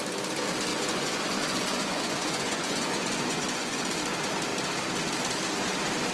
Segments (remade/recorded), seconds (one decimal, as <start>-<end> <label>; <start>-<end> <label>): 0.0-0.7 recorded; 0.7-4.0 remade; 4.0-6.1 recorded